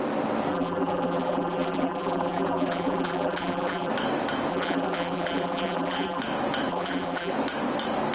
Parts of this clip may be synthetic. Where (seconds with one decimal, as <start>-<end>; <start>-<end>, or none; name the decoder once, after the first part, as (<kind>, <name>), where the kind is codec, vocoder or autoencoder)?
0.5-3.9 (vocoder, BigVGAN v2); 4.5-6.2; 6.7-7.3